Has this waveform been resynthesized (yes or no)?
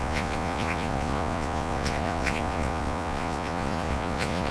yes